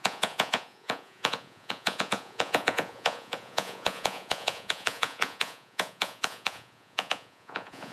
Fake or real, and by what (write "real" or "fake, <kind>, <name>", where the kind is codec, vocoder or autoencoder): fake, vocoder, Vocos